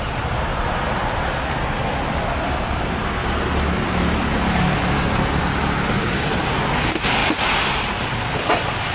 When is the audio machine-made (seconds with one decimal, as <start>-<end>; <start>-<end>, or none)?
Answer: none